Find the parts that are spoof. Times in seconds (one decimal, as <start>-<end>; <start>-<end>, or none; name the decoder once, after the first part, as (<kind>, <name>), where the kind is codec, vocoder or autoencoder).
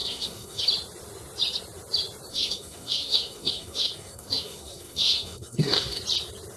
0.0-0.6 (codec, SNAC); 2.3-6.0